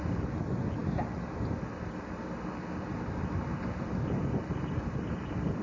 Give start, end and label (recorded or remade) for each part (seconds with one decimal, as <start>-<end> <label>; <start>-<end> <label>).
0.0-5.6 recorded